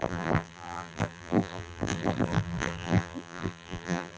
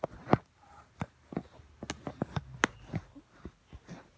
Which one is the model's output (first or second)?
first